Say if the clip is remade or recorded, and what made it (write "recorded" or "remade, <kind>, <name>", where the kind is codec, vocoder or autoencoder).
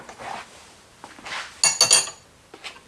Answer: recorded